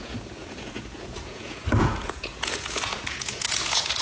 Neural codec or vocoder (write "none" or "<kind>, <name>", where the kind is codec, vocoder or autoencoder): vocoder, Vocos